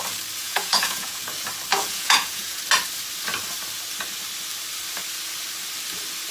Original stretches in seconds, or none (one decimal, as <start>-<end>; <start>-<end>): 0.0-0.4; 1.2-1.7; 2.6-6.3